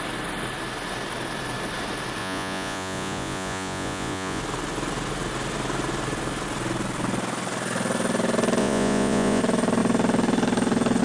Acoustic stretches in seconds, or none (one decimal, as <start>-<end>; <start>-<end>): 0.0-2.2; 4.4-8.6; 9.4-11.0